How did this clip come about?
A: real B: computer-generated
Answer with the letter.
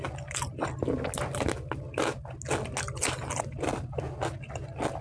A